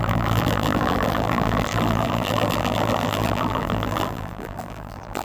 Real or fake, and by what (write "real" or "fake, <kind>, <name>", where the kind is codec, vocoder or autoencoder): fake, vocoder, BigVGAN v2